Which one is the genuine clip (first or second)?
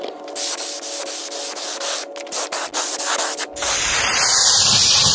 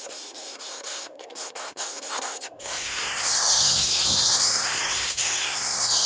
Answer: first